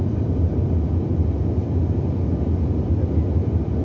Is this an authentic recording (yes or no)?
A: yes